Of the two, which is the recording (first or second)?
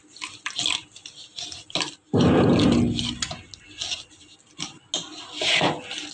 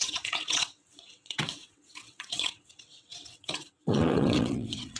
first